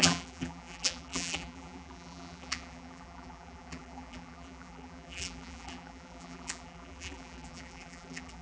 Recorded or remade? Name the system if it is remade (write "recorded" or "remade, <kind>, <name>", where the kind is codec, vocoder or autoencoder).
remade, vocoder, BigVGAN v2